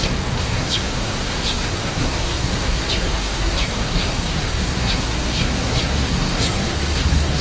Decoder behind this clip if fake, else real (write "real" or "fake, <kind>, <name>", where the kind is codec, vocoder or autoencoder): fake, codec, SNAC